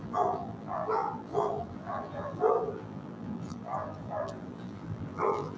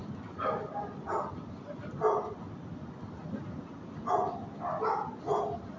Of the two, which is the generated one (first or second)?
first